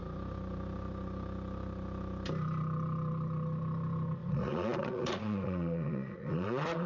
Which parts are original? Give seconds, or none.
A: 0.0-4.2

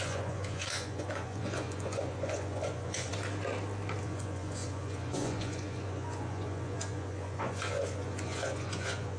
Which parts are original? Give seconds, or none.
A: 3.1-4.0